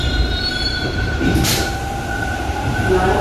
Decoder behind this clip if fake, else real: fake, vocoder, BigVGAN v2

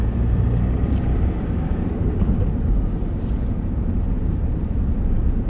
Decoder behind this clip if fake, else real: fake, vocoder, BigVGAN v2